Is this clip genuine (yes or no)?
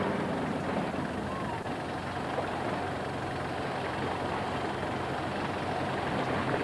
yes